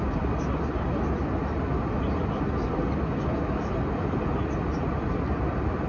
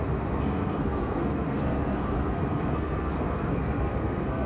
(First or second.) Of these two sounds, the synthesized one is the second